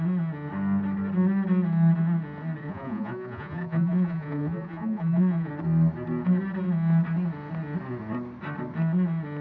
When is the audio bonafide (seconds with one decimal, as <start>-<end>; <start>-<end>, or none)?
0.0-2.6; 5.5-9.4